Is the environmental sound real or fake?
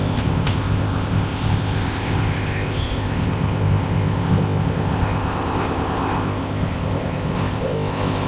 fake